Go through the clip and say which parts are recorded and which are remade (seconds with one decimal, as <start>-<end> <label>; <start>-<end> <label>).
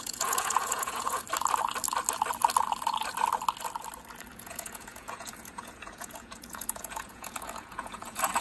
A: 0.0-1.2 remade; 1.2-4.3 recorded; 4.3-8.4 remade